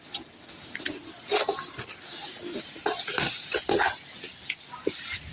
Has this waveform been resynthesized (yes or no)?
no